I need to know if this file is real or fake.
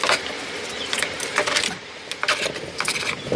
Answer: real